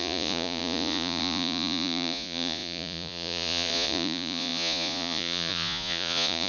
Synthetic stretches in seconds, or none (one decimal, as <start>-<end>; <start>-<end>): 0.0-6.5

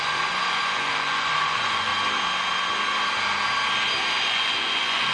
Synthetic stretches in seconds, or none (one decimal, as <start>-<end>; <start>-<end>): 0.0-1.9; 4.2-5.1

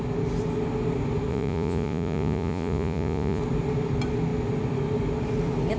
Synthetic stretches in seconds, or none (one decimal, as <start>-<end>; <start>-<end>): 1.3-3.4

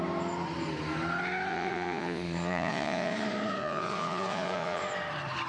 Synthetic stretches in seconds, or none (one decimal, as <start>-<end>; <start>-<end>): 1.5-4.8

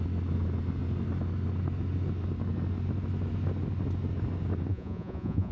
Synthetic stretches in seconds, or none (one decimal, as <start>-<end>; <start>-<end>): 4.7-5.5

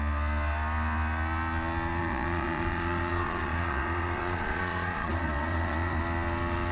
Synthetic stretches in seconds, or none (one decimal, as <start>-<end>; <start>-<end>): 2.0-6.0

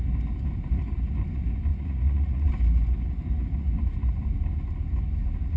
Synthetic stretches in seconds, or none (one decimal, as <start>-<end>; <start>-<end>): 1.7-2.5

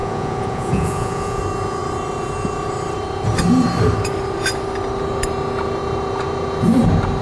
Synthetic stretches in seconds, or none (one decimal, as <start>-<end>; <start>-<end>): 0.0-1.4